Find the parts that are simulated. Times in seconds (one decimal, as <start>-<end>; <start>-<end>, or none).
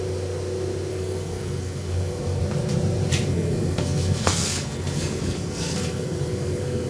0.9-2.4; 3.3-6.9